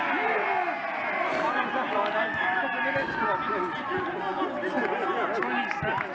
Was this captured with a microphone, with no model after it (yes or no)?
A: yes